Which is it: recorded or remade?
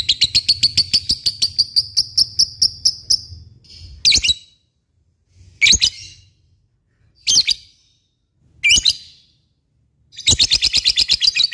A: recorded